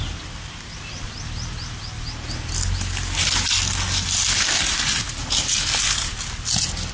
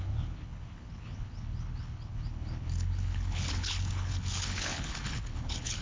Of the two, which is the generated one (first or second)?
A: second